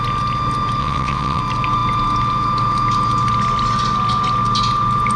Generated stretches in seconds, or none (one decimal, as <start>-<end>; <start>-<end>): 0.8-1.4